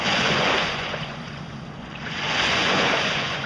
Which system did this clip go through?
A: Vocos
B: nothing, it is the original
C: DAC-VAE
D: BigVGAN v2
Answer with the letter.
A